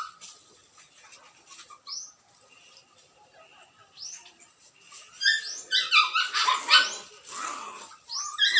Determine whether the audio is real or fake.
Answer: real